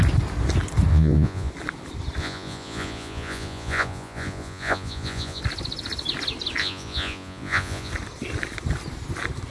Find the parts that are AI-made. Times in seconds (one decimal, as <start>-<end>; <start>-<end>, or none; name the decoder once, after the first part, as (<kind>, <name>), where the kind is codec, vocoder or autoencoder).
0.9-1.5 (vocoder, Vocos); 2.2-5.4; 6.6-7.9